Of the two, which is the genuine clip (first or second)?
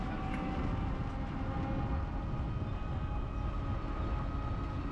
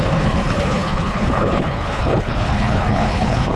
first